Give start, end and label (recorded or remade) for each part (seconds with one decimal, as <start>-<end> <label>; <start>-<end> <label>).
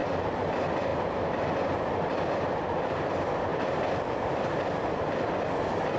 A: 0.0-0.5 remade; 0.5-0.9 recorded; 0.9-2.2 remade; 2.2-3.5 recorded; 3.5-5.3 remade; 5.3-6.0 recorded